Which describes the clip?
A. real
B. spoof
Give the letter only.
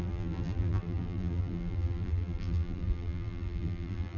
B